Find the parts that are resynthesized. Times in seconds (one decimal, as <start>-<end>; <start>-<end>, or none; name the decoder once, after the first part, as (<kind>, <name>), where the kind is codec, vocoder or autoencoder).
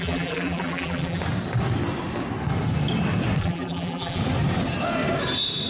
0.0-1.2 (vocoder, BigVGAN v2); 3.4-4.2